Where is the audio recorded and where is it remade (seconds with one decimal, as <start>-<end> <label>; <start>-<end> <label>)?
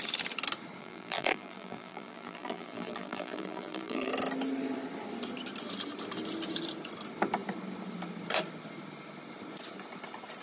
0.0-0.8 recorded; 0.8-4.1 remade; 4.1-10.4 recorded